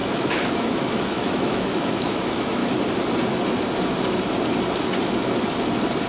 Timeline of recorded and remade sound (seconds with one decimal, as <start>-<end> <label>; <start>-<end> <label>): 0.0-2.6 remade; 2.6-6.1 recorded